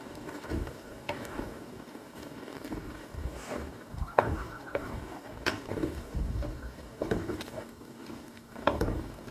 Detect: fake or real fake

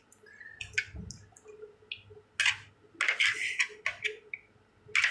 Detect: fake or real real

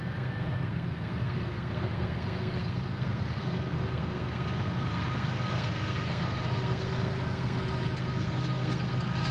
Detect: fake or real fake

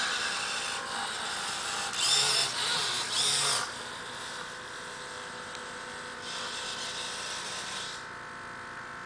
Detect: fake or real real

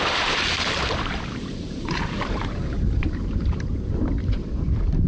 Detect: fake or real fake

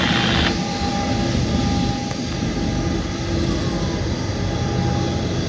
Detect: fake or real real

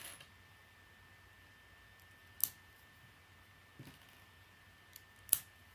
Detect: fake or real real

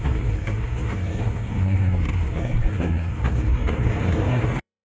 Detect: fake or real fake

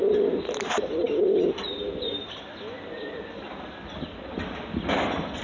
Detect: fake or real real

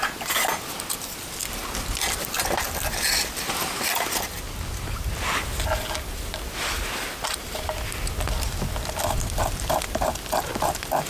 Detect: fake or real real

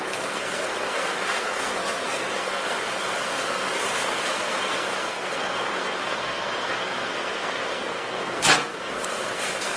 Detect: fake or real fake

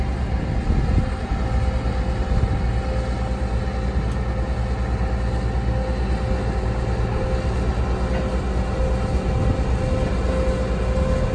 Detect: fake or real real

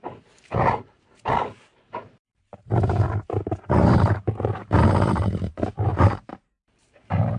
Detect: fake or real fake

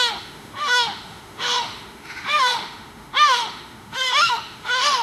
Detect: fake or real fake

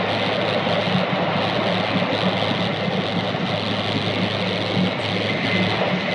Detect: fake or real real